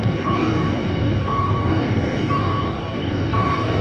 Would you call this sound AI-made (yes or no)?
yes